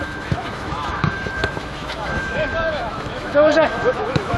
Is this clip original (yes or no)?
no